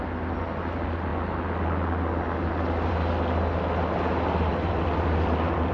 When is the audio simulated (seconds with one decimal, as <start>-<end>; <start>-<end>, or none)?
4.5-5.7